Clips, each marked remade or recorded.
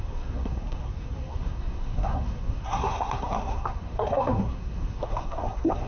remade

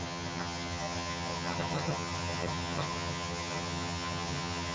remade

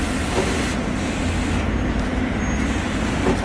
recorded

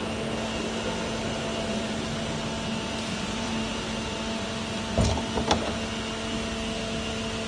recorded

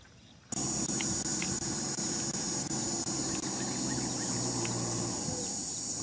recorded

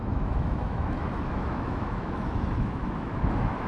remade